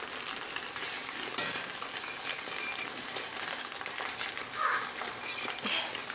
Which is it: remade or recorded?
recorded